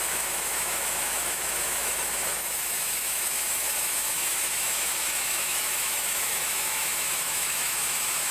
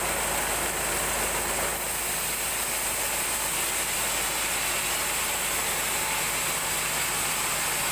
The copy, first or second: first